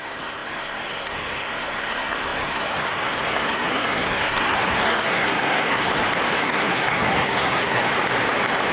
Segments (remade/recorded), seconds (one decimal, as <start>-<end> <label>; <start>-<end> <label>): 0.0-5.9 remade; 5.9-6.4 recorded; 6.4-7.8 remade; 7.8-8.7 recorded